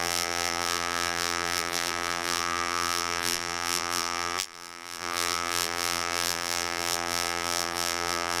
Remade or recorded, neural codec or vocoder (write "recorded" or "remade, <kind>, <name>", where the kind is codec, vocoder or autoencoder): remade, vocoder, BigVGAN v2